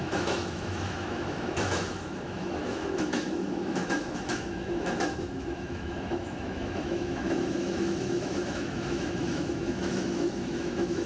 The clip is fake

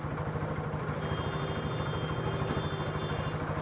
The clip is real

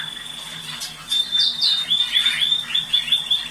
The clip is real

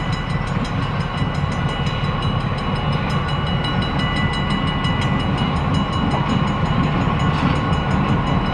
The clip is real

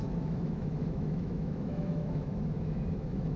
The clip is fake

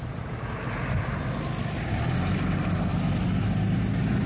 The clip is real